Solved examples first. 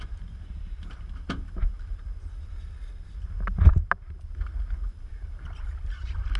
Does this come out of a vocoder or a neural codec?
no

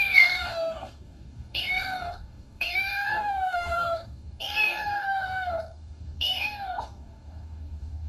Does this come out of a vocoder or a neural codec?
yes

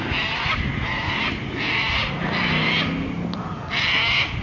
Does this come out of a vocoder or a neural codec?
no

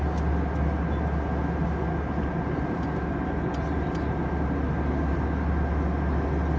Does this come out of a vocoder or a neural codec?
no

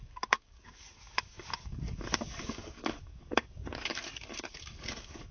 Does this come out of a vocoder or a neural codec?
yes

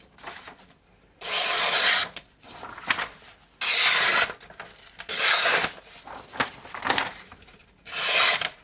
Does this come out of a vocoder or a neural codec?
no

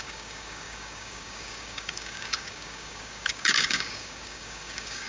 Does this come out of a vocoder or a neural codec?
yes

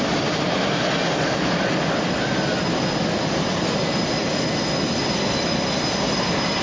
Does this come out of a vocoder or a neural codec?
no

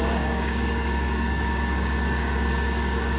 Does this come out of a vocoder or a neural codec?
yes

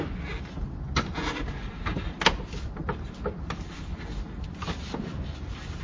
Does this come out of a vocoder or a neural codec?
no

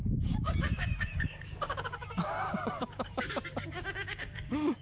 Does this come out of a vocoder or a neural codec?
yes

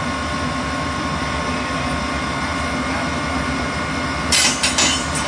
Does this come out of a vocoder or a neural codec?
no